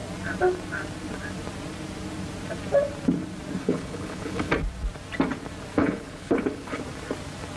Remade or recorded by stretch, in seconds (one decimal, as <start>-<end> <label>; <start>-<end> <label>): 0.0-3.6 recorded; 3.6-4.5 remade; 4.5-5.8 recorded; 5.8-6.8 remade; 6.8-7.6 recorded